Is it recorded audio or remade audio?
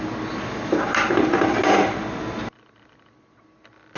recorded